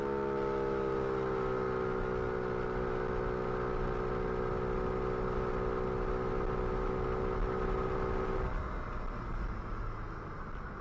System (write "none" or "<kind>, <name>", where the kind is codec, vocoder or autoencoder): none